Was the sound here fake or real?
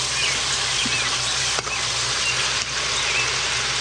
real